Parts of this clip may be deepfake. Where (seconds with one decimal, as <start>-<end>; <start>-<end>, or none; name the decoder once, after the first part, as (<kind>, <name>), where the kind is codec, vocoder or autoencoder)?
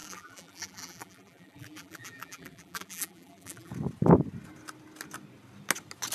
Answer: 0.0-3.7 (vocoder, BigVGAN v2)